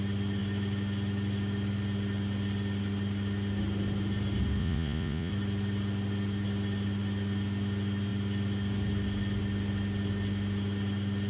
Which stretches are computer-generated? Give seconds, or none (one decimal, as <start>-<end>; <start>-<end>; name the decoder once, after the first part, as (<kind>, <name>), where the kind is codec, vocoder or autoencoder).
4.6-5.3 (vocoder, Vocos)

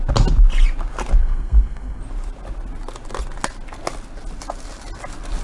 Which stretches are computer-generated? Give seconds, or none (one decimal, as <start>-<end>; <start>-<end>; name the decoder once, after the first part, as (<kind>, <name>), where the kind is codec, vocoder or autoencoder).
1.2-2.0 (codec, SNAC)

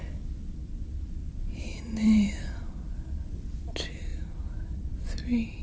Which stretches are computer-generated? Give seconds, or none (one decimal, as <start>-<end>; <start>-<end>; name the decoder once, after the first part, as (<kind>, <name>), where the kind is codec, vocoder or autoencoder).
0.6-3.4 (vocoder, BigVGAN v2); 4.1-4.8

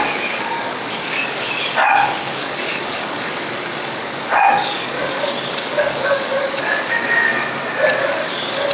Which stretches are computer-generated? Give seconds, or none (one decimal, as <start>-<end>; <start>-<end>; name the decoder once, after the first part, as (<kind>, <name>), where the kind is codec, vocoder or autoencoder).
0.0-7.3 (codec, DAC); 8.0-8.7